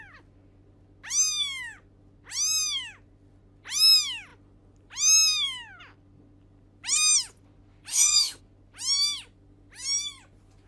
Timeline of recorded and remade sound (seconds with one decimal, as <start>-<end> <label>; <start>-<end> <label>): 0.0-7.9 recorded; 7.9-8.4 remade; 8.4-10.7 recorded